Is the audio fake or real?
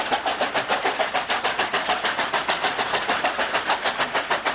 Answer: fake